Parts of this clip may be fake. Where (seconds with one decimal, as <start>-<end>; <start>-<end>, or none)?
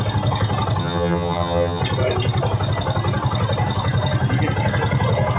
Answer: 0.8-1.8